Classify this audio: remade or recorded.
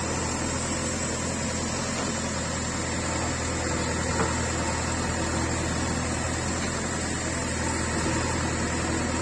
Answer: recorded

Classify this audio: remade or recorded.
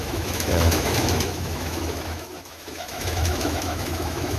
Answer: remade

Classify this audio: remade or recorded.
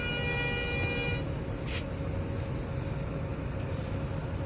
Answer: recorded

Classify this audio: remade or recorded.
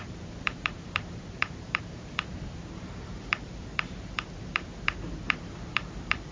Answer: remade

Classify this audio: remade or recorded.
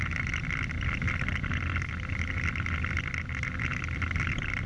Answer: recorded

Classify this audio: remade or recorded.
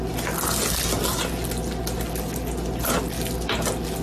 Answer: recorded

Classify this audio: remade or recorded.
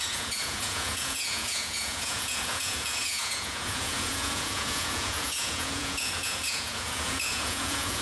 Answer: remade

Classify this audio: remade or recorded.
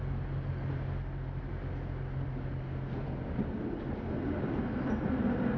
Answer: recorded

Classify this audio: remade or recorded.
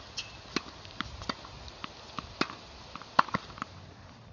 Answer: recorded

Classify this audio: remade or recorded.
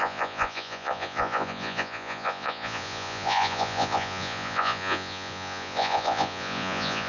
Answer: remade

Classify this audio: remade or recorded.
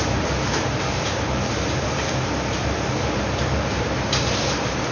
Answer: remade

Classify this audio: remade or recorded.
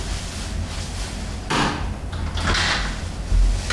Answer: recorded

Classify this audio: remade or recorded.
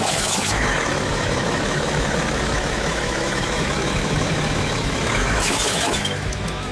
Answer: remade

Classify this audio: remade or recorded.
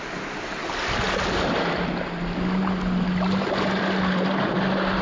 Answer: recorded